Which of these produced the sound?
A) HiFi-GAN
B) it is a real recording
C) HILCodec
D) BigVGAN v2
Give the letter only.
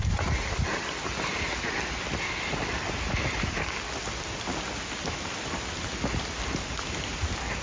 B